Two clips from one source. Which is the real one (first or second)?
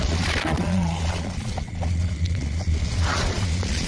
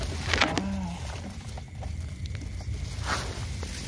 second